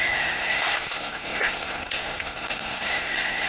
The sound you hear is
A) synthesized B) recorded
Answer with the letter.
A